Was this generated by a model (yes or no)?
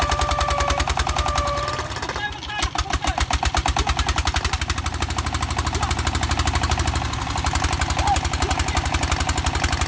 no